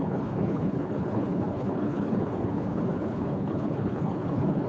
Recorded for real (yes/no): no